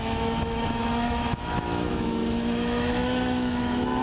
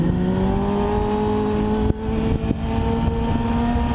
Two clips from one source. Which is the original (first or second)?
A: second